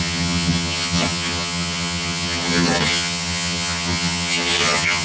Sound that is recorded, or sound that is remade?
remade